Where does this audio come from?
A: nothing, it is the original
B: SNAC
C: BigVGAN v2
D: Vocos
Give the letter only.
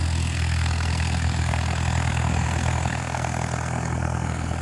B